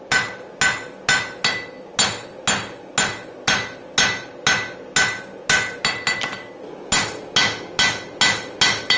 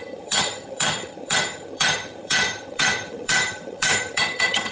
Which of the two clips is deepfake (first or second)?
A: second